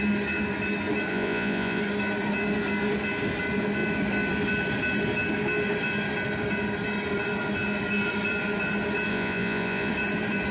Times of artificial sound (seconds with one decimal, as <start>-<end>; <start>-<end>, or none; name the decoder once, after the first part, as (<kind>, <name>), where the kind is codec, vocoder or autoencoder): 1.1-1.8 (vocoder, Vocos); 9.1-9.9